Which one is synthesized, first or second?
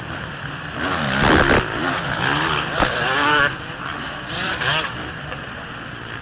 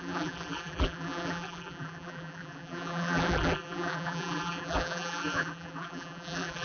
second